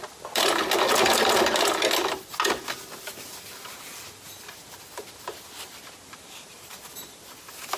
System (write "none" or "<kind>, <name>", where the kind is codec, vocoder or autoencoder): none